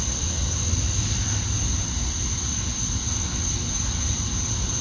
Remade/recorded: recorded